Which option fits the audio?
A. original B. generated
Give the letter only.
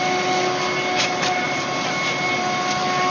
A